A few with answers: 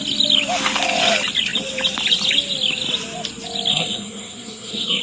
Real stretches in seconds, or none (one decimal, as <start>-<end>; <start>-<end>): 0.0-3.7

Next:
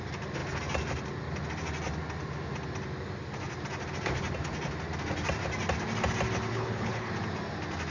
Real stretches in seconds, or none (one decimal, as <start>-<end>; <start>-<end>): 0.0-6.5; 7.1-7.9

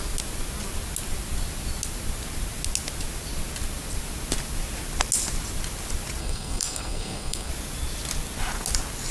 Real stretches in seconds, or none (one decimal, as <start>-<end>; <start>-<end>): 0.0-6.2; 7.5-9.1